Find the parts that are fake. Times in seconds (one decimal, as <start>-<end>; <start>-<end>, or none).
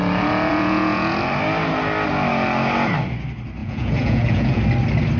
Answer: 0.5-1.2; 3.6-4.6